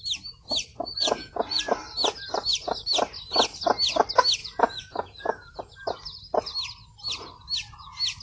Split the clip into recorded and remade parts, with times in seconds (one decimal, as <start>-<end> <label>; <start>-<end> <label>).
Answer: 0.0-0.7 recorded; 0.7-1.6 remade; 1.6-4.4 recorded; 4.4-5.6 remade; 5.6-8.2 recorded